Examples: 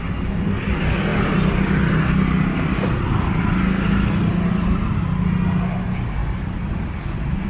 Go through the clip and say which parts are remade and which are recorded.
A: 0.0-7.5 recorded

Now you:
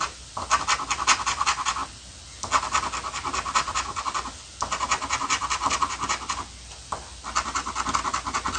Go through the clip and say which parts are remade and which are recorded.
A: 0.0-8.6 recorded